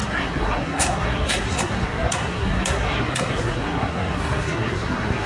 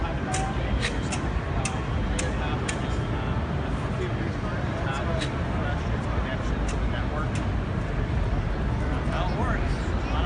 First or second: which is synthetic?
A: first